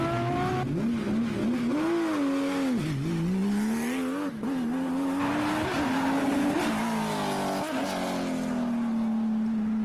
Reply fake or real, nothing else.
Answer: real